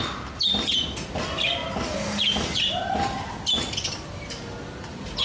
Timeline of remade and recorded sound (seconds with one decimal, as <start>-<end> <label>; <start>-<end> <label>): 0.0-5.2 recorded